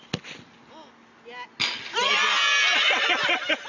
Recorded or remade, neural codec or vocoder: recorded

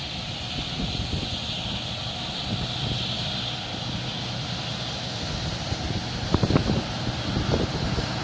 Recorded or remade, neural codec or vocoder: recorded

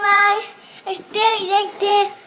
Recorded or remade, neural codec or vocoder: remade, vocoder, Vocos